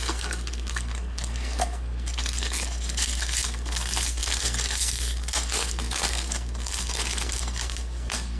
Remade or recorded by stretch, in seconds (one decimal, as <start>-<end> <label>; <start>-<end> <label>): 0.0-8.4 remade